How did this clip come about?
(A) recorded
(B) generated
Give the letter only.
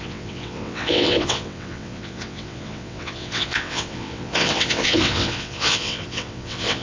B